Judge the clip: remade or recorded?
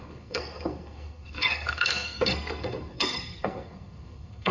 remade